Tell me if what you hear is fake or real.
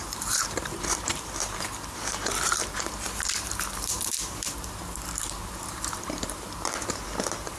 fake